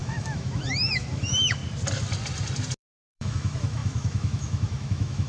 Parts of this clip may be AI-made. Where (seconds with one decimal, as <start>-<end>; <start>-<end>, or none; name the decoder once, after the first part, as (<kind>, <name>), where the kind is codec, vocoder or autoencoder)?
0.0-1.6 (autoencoder, DAC-VAE); 2.8-5.3